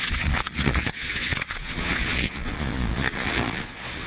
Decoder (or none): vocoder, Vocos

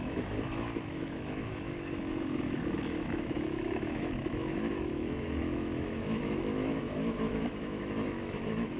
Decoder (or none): autoencoder, DAC-VAE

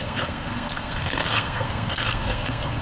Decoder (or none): codec, SNAC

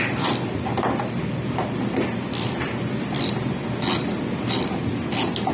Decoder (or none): none